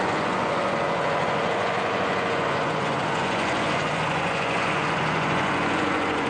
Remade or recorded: remade